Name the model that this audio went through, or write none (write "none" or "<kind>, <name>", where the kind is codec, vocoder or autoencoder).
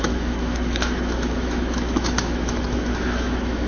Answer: autoencoder, DAC-VAE